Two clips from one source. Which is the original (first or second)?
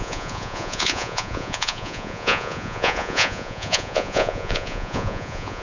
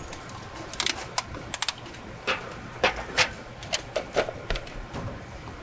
second